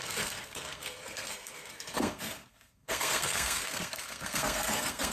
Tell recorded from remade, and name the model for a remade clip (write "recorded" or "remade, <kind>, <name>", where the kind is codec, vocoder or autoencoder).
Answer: remade, codec, SNAC